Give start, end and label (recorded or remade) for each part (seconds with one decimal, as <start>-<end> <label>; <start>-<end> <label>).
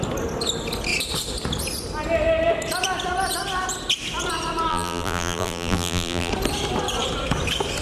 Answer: 0.0-4.7 recorded; 4.7-6.3 remade; 6.3-7.8 recorded